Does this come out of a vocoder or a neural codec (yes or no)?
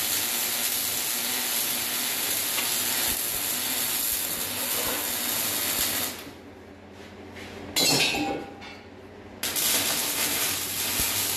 no